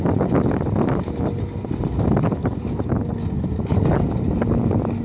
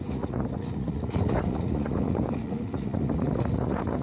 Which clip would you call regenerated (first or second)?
second